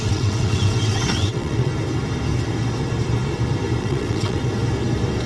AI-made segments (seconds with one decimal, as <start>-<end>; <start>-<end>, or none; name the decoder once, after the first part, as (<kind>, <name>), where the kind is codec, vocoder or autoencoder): 0.0-1.7 (vocoder, WaveNeXt); 3.8-4.4